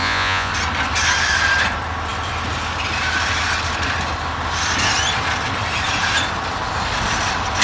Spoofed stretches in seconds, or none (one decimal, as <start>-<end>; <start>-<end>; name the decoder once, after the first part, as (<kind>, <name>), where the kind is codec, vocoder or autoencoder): 0.0-0.5 (vocoder, Vocos)